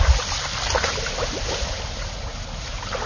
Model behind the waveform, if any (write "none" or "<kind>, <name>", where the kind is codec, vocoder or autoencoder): none